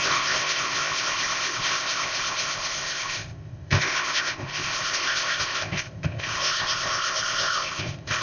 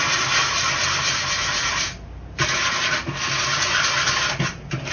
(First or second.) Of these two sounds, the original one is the second